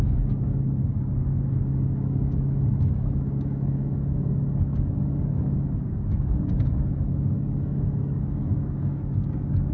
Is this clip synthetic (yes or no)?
yes